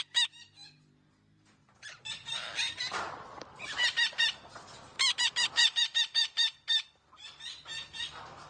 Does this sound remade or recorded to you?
remade